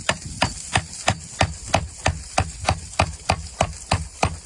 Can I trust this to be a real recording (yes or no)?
yes